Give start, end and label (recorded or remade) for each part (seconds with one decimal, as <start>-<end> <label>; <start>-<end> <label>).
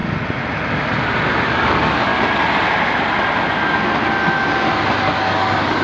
0.0-1.4 recorded; 1.4-2.1 remade; 2.1-5.0 recorded; 5.0-5.8 remade